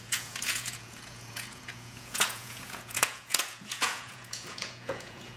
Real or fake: fake